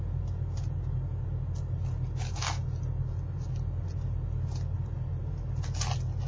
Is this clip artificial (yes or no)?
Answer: no